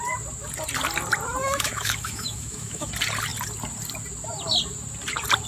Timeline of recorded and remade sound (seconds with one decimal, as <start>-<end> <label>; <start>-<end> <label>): 0.0-1.4 recorded; 1.4-2.9 remade; 2.9-5.5 recorded